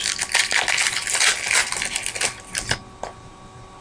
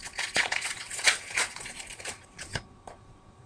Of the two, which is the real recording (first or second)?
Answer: first